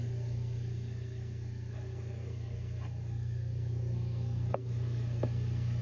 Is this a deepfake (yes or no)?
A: yes